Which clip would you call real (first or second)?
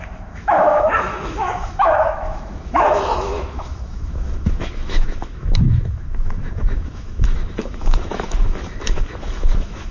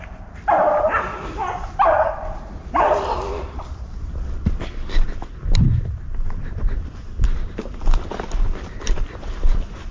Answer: second